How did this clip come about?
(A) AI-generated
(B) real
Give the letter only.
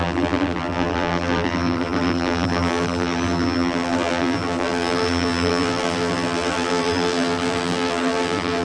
A